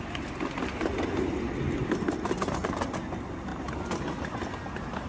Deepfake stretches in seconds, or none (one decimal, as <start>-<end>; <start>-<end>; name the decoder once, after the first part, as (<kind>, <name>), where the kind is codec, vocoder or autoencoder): none